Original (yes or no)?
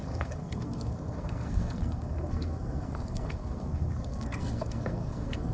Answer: no